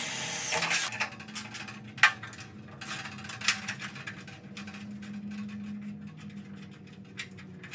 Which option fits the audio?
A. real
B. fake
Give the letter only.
A